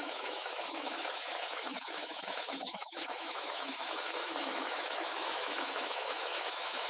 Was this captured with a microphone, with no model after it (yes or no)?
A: no